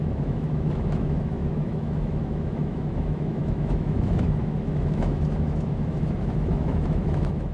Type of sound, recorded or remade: remade